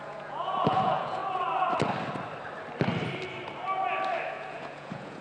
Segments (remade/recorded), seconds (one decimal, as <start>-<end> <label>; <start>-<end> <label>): 0.0-1.2 remade; 1.2-4.3 recorded; 4.3-5.2 remade